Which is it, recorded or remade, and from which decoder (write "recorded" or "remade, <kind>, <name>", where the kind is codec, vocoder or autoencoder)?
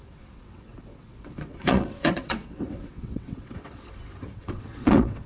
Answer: remade, vocoder, WaveNeXt